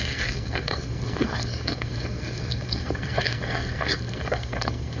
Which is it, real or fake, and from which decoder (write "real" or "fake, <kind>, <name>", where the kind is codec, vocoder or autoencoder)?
fake, codec, SNAC